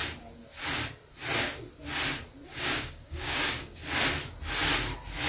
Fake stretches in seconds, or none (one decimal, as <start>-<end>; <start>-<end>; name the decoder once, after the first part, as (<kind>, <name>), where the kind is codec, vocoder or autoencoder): 2.5-3.8 (codec, DAC)